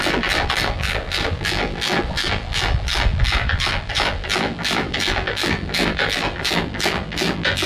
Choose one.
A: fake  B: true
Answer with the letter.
A